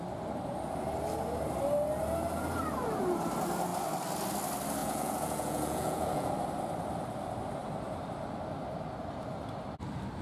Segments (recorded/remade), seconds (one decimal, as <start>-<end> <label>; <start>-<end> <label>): 0.0-4.8 recorded; 4.8-6.3 remade; 6.3-10.2 recorded